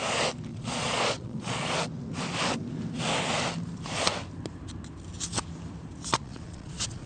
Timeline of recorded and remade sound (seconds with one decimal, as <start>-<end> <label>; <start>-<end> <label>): 0.0-0.5 recorded; 0.5-1.7 remade; 1.7-6.2 recorded; 6.2-7.1 remade